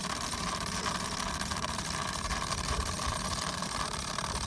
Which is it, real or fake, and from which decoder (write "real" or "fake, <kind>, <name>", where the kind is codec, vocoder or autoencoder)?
fake, vocoder, BigVGAN v2